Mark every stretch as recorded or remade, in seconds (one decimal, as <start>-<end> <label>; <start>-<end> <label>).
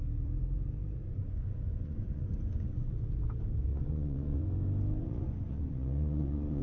0.0-1.0 recorded; 1.0-2.9 remade; 2.9-3.7 recorded; 3.7-4.4 remade; 4.4-5.0 recorded; 5.0-6.6 remade